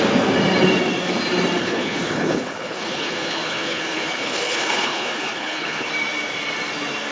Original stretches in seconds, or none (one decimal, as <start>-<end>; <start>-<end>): 0.0-1.6; 5.9-7.1